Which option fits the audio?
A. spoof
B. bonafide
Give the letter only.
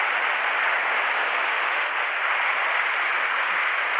B